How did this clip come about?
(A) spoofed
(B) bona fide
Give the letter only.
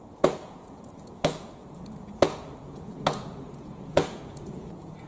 A